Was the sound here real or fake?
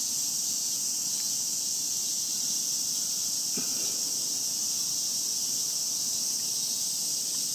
real